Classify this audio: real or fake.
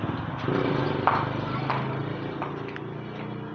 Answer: real